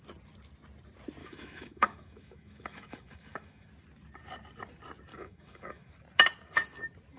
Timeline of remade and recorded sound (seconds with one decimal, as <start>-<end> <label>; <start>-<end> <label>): 0.0-1.2 recorded; 1.2-3.7 remade; 3.7-5.1 recorded; 5.1-5.9 remade; 5.9-7.2 recorded